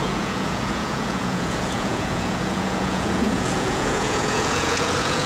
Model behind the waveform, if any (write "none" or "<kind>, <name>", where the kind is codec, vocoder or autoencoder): vocoder, Vocos